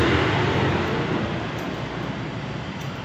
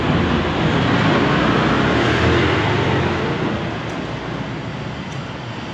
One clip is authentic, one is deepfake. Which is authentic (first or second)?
second